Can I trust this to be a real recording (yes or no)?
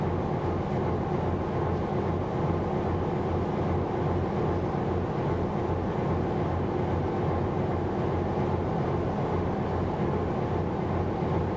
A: yes